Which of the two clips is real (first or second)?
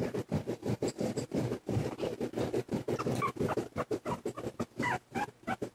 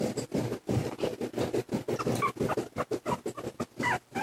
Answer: second